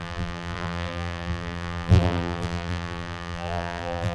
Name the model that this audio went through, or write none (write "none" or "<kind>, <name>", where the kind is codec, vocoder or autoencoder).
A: vocoder, BigVGAN v2